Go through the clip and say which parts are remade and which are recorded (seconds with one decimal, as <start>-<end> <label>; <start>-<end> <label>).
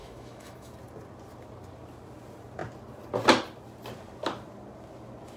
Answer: 0.0-0.7 remade; 0.7-5.4 recorded